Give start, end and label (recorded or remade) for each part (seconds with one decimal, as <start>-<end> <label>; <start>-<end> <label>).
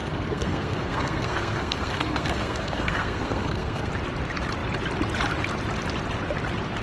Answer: 0.0-3.9 remade; 3.9-6.8 recorded